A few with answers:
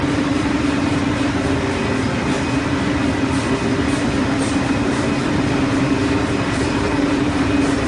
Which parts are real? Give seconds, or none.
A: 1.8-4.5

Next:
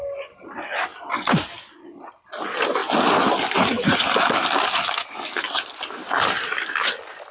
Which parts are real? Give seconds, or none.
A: 0.0-7.3

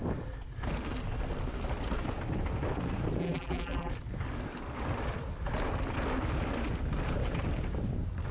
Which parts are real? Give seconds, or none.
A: 0.0-3.2; 3.9-8.3

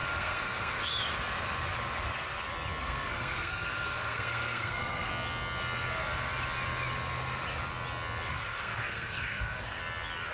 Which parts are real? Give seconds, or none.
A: 0.8-2.8; 5.1-8.3; 9.8-10.3

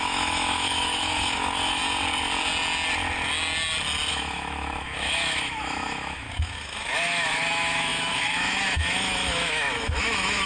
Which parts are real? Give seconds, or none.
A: 1.8-4.1

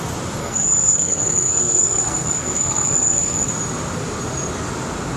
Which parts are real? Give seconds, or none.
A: 0.0-0.4; 3.5-5.2

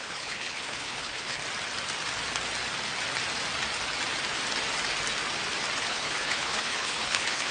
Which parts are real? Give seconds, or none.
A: 1.4-5.9

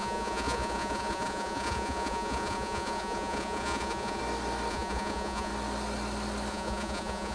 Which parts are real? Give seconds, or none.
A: 4.2-4.7; 5.5-6.5